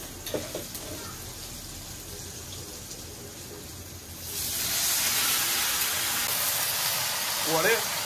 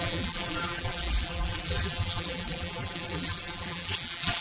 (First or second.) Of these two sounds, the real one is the first